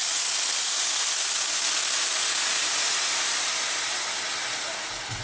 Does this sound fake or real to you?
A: real